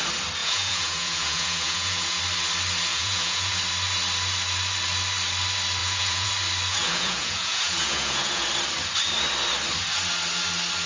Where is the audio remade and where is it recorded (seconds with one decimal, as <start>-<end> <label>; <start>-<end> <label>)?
0.0-0.4 recorded; 0.4-2.2 remade; 2.2-2.9 recorded; 2.9-3.6 remade; 3.6-5.8 recorded; 5.8-6.3 remade; 6.3-6.7 recorded; 6.7-8.5 remade; 8.5-10.9 recorded